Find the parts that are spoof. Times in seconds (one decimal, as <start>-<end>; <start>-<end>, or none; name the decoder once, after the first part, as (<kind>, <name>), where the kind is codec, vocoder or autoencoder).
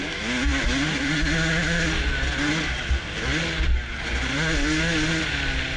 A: none